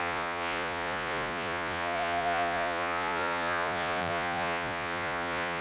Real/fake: fake